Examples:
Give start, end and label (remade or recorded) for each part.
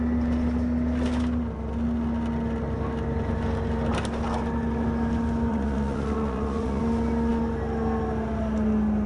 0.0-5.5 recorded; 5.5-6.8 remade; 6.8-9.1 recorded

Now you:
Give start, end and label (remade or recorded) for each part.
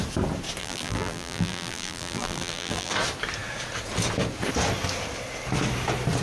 0.0-0.6 recorded; 0.6-2.9 remade; 2.9-6.2 recorded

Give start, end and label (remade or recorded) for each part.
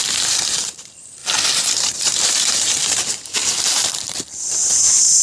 0.0-1.2 remade; 1.2-2.0 recorded; 2.0-5.2 remade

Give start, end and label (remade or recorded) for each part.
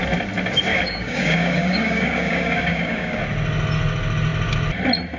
0.0-0.7 recorded; 0.7-3.2 remade; 3.2-5.2 recorded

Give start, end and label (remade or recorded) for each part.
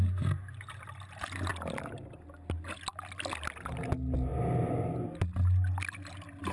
0.0-6.5 recorded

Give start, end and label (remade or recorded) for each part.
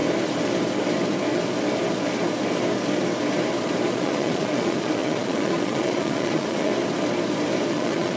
0.0-3.9 recorded; 3.9-6.7 remade; 6.7-7.7 recorded; 7.7-8.2 remade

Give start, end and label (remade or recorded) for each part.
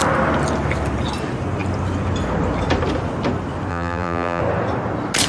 0.0-3.7 recorded; 3.7-4.4 remade; 4.4-5.3 recorded